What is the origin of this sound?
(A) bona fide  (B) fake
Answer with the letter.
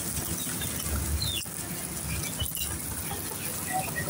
A